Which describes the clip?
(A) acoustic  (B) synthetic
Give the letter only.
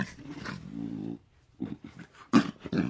A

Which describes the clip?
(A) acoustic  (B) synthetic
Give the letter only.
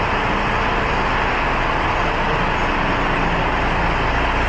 A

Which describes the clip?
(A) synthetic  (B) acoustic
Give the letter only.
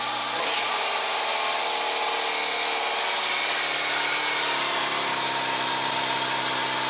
B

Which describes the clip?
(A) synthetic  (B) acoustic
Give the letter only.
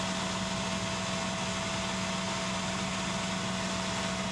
B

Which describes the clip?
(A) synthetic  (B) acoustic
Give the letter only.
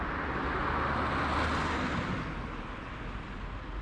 B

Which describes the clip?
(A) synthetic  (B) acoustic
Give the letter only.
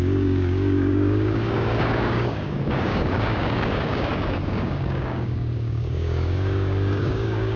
A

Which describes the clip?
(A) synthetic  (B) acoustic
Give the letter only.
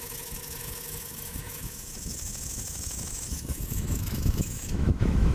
A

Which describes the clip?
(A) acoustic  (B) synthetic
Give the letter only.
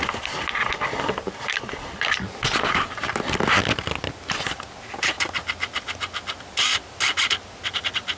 A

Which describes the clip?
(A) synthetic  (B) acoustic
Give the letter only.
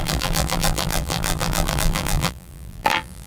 A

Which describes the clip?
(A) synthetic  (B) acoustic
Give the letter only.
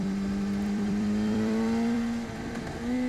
A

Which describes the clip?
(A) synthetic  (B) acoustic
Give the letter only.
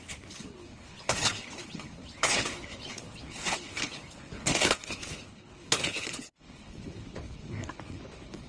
A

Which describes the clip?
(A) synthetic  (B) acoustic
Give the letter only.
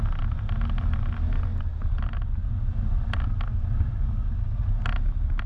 B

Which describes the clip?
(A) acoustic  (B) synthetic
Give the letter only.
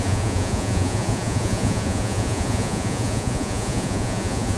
B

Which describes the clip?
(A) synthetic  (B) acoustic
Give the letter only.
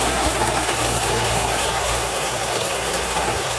A